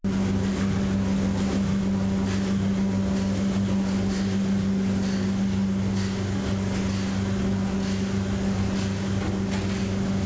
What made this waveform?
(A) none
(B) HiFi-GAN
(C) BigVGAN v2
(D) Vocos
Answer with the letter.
A